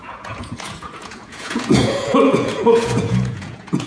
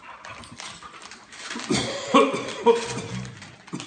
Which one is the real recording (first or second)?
second